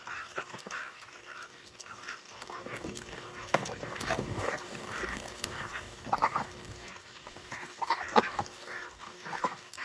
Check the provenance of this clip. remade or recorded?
remade